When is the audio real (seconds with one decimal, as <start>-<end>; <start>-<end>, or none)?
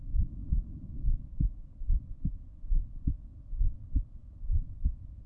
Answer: none